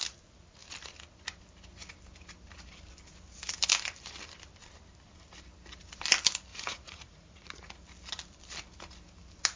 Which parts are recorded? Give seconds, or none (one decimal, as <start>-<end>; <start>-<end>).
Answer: 0.0-6.5; 7.7-9.6